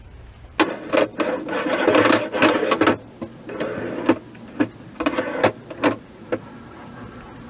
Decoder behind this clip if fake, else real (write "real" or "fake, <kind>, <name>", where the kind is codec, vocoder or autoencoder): real